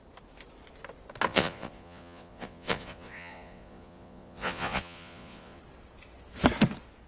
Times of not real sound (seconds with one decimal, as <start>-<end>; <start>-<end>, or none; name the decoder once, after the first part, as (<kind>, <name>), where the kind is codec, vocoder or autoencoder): 1.3-5.6 (vocoder, Vocos)